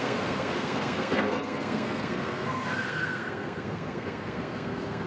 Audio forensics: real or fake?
fake